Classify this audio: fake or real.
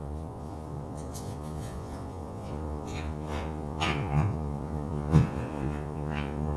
fake